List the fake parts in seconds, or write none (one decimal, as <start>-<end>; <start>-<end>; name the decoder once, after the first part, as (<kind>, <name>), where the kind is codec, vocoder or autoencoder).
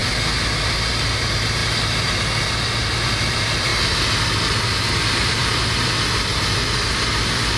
none